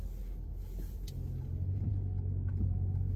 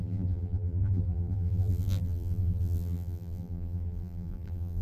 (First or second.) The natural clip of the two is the first